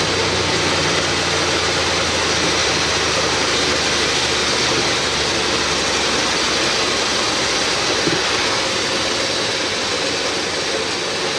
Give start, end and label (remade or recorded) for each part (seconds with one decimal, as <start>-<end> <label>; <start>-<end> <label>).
0.0-2.6 recorded; 2.6-3.6 remade; 3.6-11.4 recorded